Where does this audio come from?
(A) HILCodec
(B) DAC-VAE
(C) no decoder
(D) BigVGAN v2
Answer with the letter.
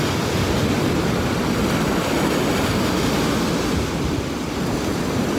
C